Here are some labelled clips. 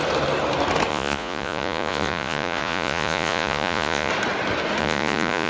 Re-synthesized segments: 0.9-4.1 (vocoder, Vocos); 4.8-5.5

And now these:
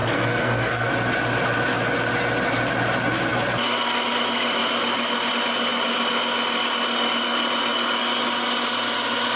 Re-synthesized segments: 0.0-0.9 (codec, SNAC)

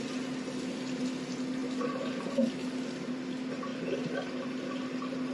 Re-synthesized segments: none

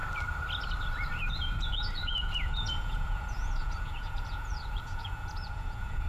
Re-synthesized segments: 1.3-6.1 (vocoder, Vocos)

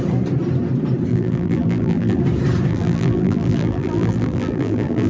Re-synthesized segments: 1.1-2.2 (vocoder, BigVGAN v2); 2.7-5.1